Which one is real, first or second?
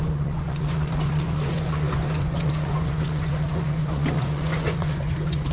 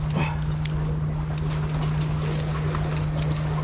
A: second